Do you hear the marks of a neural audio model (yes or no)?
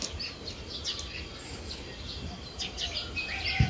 no